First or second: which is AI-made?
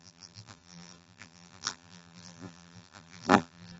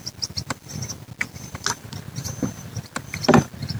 first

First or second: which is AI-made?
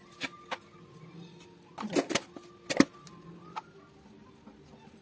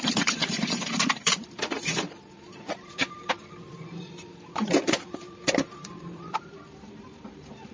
second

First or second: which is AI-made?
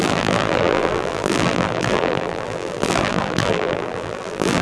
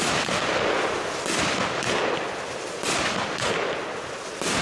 first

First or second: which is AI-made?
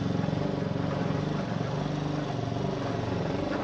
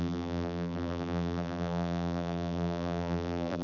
second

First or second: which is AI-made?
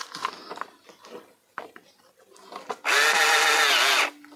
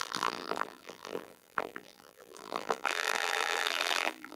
second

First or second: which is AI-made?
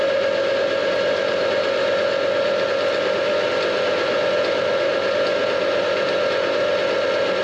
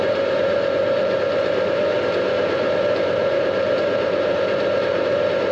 second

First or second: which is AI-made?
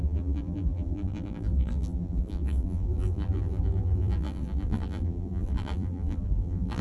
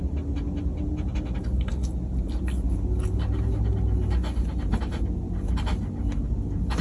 first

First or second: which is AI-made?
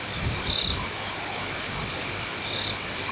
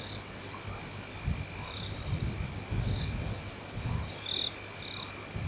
first